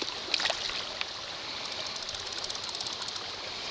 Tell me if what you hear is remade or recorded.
recorded